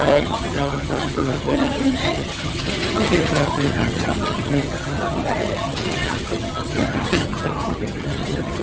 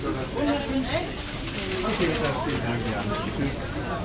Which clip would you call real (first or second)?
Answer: second